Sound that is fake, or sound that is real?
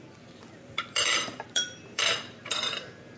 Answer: fake